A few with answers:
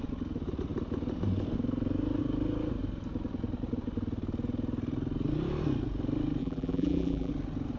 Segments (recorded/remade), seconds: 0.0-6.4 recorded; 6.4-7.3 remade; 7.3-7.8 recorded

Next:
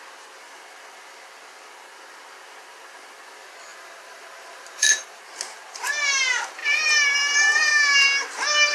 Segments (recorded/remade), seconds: 0.0-3.7 recorded; 3.7-5.2 remade; 5.2-6.6 recorded; 6.6-7.7 remade; 7.7-8.7 recorded

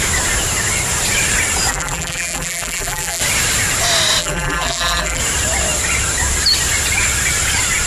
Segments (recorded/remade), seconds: 0.0-1.7 recorded; 1.7-3.2 remade; 3.2-4.2 recorded; 4.2-5.2 remade; 5.2-7.9 recorded